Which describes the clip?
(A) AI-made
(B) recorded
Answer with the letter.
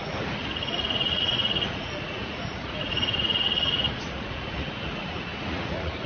A